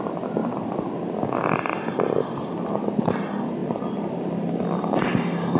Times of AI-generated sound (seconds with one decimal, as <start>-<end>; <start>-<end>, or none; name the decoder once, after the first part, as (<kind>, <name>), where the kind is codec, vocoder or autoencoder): none